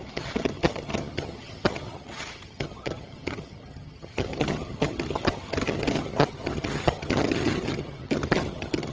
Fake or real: fake